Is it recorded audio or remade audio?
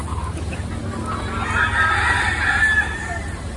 recorded